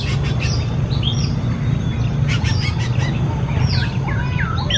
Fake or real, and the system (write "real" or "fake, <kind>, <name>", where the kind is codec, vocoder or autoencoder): real